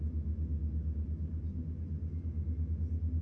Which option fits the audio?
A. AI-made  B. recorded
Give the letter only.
B